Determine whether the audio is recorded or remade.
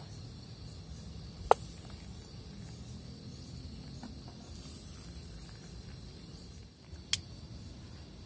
recorded